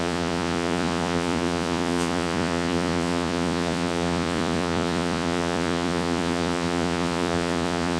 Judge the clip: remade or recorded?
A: remade